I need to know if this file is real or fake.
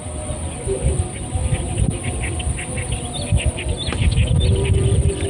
real